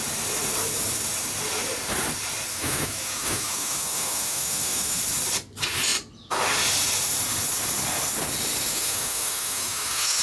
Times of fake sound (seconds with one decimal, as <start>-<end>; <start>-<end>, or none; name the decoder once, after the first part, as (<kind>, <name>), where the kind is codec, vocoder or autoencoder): 2.5-5.0 (autoencoder, DAC-VAE); 8.7-10.2